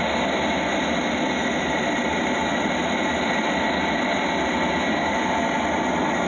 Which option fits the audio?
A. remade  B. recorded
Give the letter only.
B